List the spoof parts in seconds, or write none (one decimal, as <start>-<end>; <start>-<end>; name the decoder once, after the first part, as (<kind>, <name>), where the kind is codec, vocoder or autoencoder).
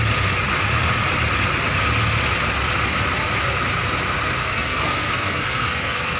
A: 4.4-6.2 (codec, SNAC)